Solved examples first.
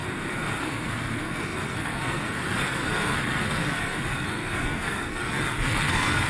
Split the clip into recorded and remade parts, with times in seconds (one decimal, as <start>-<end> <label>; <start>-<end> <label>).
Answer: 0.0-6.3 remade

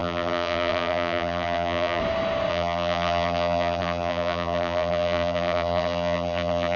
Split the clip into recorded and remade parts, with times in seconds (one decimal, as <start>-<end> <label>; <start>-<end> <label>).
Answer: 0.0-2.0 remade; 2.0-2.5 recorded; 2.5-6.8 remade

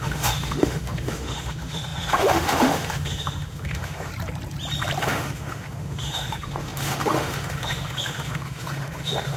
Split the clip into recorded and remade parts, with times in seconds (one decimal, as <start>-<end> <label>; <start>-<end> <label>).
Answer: 0.0-4.1 remade; 4.1-5.0 recorded; 5.0-9.4 remade

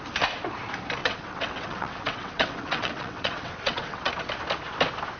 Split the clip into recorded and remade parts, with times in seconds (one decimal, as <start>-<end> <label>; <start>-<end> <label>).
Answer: 0.0-1.0 recorded; 1.0-4.1 remade; 4.1-5.2 recorded

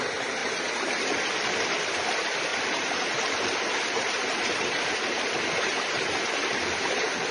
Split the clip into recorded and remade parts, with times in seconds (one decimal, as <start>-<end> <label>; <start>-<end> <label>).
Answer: 0.0-0.4 recorded; 0.4-1.1 remade; 1.1-2.5 recorded; 2.5-7.3 remade

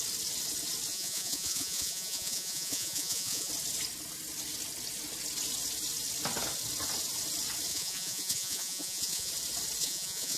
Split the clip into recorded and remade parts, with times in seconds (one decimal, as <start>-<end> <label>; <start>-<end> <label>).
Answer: 0.0-0.9 recorded; 0.9-3.5 remade; 3.5-7.7 recorded; 7.7-9.3 remade; 9.3-9.8 recorded; 9.8-10.4 remade

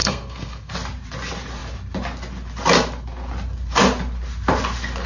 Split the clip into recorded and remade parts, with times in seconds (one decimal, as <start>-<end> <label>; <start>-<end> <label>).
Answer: 0.0-0.7 remade; 0.7-5.1 recorded